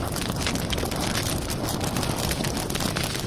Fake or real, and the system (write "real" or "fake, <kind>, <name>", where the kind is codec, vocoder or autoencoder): real